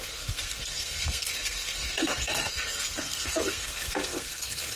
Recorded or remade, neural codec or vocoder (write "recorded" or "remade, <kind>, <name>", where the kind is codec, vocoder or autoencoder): remade, codec, SNAC